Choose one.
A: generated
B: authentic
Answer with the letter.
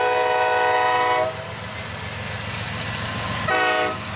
B